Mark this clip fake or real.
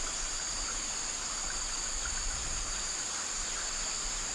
real